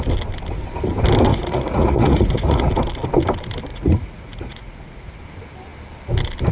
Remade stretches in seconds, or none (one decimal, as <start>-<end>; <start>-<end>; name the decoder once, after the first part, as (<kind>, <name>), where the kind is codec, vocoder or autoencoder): 1.3-2.7 (vocoder, Vocos); 3.7-5.2

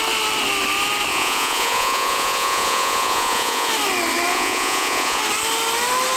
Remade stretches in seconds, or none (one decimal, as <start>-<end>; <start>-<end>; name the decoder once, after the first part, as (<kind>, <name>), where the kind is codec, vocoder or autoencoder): 1.1-3.7 (vocoder, Vocos); 4.3-5.2

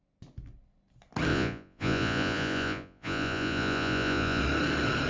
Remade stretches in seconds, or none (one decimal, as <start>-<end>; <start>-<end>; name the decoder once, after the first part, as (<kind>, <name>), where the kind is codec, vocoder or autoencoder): 1.3-4.4 (vocoder, Vocos)